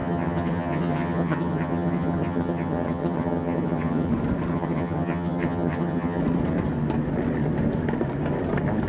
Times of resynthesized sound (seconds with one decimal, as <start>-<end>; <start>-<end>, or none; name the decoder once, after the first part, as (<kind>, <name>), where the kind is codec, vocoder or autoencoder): 0.0-4.1 (vocoder, HiFi-GAN); 4.5-6.2